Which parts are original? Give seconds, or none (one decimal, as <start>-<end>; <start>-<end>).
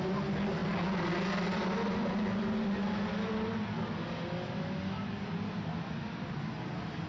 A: 0.0-7.1